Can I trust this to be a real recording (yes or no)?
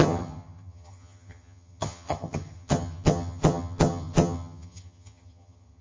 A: no